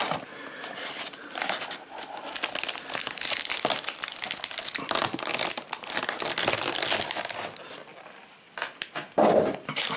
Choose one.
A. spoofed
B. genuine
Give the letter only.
B